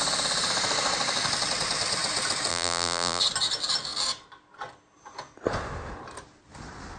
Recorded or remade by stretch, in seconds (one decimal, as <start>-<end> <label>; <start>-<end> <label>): 0.0-2.5 recorded; 2.5-3.2 remade; 3.2-7.0 recorded